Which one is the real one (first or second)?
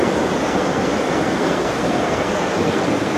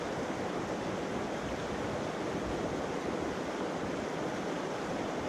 second